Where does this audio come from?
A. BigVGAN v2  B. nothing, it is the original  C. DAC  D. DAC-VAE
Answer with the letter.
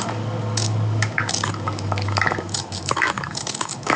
C